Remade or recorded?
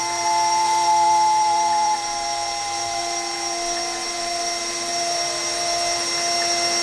remade